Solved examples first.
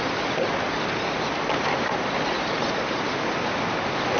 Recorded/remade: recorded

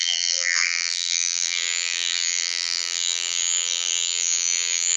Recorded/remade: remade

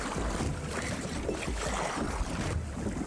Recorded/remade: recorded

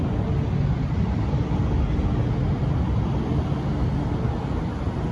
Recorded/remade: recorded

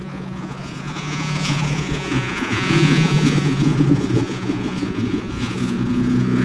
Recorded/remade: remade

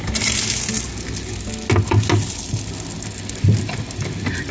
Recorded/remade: recorded